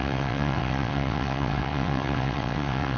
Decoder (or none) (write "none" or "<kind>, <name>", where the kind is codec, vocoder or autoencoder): vocoder, WaveNeXt